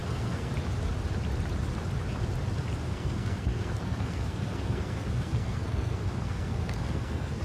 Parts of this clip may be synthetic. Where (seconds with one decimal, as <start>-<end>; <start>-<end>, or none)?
0.0-0.5; 2.9-7.4